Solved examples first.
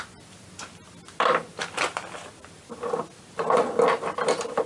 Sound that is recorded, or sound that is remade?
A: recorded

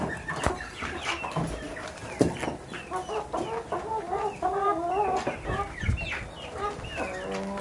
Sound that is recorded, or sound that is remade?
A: recorded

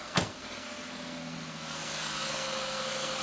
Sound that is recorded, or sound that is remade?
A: remade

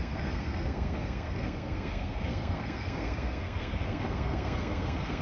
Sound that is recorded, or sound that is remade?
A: remade